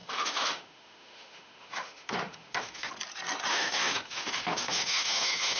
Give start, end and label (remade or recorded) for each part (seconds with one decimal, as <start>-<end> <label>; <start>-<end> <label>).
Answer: 0.0-2.9 remade; 2.9-3.5 recorded; 3.5-5.6 remade